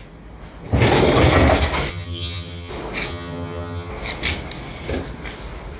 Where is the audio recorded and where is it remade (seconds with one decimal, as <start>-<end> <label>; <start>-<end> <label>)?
0.0-1.9 recorded; 1.9-2.7 remade; 2.7-3.1 recorded; 3.1-3.9 remade; 3.9-5.8 recorded

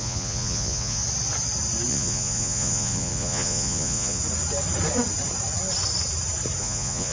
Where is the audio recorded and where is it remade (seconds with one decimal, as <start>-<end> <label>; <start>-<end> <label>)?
0.0-1.0 remade; 1.0-1.9 recorded; 1.9-4.2 remade; 4.2-6.6 recorded; 6.6-7.1 remade

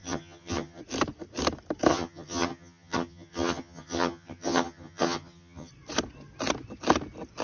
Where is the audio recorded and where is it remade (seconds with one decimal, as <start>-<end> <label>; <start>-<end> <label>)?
0.0-0.8 remade; 0.8-1.9 recorded; 1.9-5.7 remade; 5.7-7.4 recorded

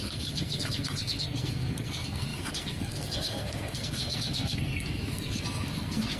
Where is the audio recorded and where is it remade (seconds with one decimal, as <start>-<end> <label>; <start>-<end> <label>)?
0.0-6.2 remade

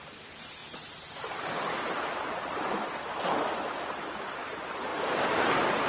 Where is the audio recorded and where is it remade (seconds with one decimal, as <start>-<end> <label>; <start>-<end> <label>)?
0.0-0.6 remade; 0.6-4.1 recorded; 4.1-4.9 remade; 4.9-5.9 recorded

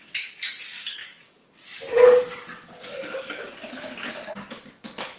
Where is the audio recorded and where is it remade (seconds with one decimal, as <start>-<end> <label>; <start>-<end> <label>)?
0.0-5.2 remade

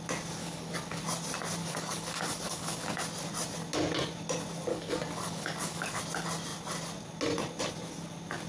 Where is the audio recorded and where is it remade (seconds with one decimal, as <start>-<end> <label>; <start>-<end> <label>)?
0.0-0.4 recorded; 0.4-1.0 remade; 1.0-1.6 recorded; 1.6-3.0 remade; 3.0-4.7 recorded; 4.7-6.0 remade; 6.0-8.5 recorded

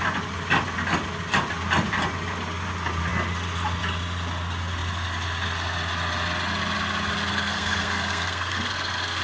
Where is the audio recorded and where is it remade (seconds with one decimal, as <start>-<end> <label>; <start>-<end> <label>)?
0.0-7.3 recorded; 7.3-9.2 remade